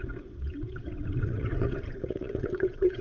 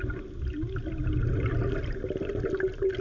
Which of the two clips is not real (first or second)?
first